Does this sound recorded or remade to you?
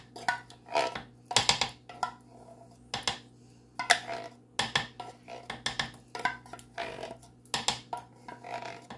recorded